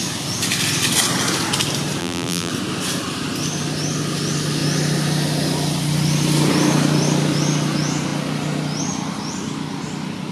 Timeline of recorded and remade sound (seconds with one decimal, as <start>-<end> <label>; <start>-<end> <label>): 0.0-2.0 recorded; 2.0-2.5 remade; 2.5-10.3 recorded